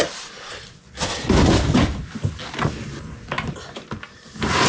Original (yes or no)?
yes